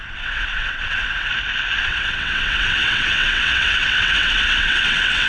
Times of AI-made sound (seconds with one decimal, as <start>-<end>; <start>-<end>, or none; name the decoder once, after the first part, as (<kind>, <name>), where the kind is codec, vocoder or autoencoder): 0.0-1.3 (vocoder, WaveNeXt); 1.8-5.3